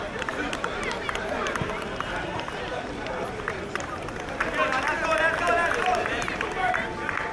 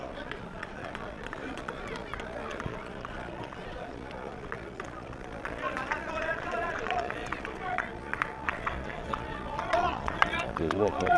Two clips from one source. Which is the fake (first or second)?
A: second